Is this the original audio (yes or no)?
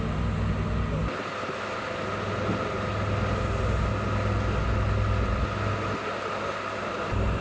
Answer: yes